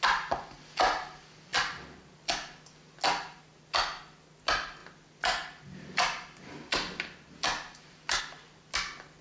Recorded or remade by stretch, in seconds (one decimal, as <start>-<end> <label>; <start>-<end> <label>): 0.0-9.2 recorded